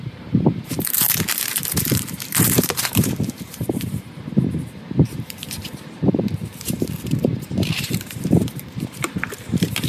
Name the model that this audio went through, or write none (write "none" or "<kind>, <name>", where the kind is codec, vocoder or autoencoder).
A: vocoder, BigVGAN v2